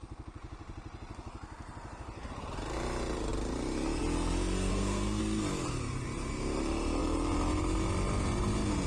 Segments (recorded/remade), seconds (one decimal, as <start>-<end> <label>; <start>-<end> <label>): 0.0-4.7 recorded; 4.7-5.2 remade; 5.2-8.9 recorded